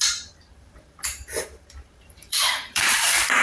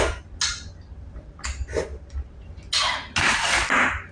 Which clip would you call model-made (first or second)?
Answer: first